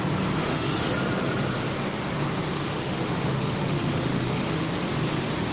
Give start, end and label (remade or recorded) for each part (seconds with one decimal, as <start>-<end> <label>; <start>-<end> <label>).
0.0-0.4 recorded; 0.4-0.9 remade; 0.9-2.5 recorded; 2.5-4.7 remade; 4.7-5.5 recorded